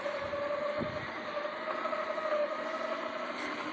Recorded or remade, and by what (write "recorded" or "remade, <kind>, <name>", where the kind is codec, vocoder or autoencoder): recorded